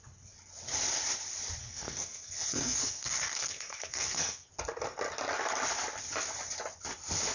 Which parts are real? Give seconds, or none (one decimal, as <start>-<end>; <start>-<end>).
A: 0.0-1.6; 4.5-7.3

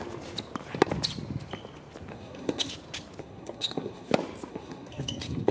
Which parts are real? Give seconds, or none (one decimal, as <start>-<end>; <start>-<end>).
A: 0.0-2.1; 2.7-3.2; 4.1-4.5

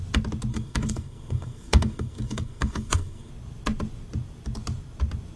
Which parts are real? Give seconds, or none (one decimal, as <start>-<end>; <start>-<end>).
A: 0.0-0.5; 3.3-5.4